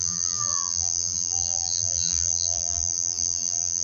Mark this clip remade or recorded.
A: remade